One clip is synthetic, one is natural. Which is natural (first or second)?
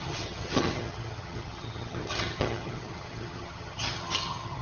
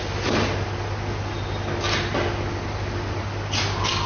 second